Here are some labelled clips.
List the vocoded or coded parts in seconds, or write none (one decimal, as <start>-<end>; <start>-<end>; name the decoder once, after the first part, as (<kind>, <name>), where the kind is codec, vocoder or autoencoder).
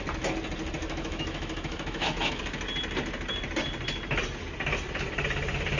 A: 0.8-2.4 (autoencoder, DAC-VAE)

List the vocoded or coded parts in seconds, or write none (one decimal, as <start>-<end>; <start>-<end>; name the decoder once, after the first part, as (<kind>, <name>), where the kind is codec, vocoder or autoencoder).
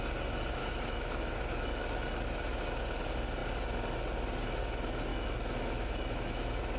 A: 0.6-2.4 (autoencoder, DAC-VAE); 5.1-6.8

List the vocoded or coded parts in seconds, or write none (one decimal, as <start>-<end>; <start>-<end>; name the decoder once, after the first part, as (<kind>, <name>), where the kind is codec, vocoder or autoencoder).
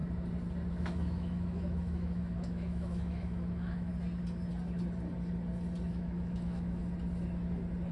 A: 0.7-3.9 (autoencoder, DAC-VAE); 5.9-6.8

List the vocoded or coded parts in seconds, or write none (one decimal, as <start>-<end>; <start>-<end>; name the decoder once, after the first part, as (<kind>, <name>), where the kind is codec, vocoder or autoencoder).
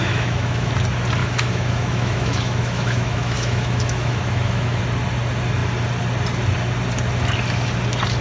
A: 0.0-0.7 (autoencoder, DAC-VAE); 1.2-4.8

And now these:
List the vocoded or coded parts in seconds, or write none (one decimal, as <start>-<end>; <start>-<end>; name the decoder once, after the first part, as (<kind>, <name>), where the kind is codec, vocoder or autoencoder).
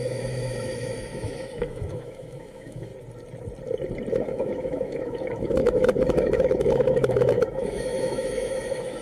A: 0.0-2.9 (autoencoder, DAC-VAE); 4.1-9.0